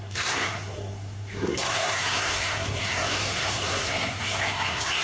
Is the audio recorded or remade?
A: remade